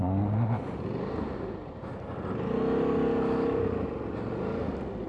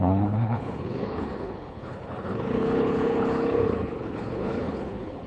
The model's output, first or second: second